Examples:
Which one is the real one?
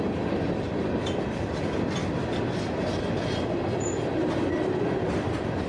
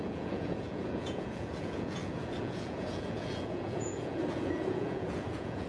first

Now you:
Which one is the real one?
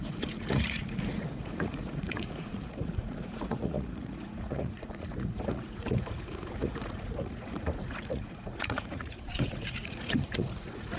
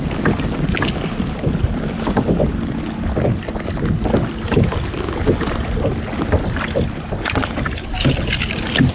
second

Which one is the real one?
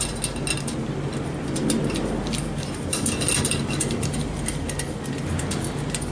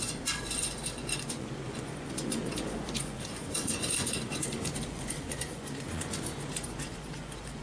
first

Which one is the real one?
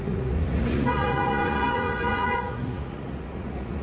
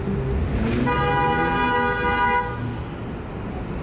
second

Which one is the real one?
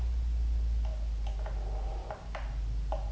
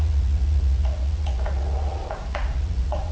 first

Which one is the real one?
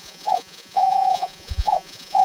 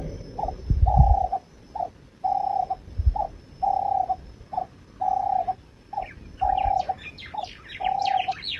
second